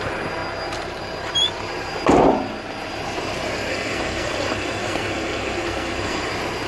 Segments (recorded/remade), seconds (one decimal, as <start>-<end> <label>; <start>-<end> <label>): 0.0-3.7 recorded; 3.7-6.3 remade; 6.3-6.7 recorded